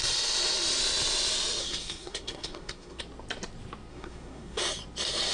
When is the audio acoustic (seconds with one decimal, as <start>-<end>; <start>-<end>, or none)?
0.0-1.6; 3.0-3.9; 4.6-5.3

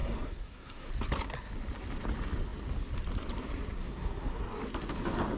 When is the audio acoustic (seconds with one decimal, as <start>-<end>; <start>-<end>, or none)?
0.9-3.8; 4.4-5.4

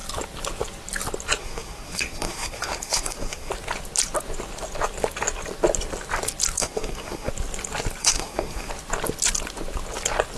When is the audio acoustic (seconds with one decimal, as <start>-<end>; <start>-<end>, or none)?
0.0-1.4; 3.5-6.6; 7.3-8.0; 8.7-10.4

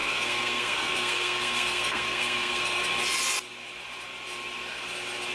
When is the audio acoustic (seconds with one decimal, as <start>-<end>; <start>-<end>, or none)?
2.8-5.3

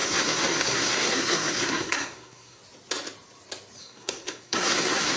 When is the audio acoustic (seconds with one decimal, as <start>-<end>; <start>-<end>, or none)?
2.6-3.8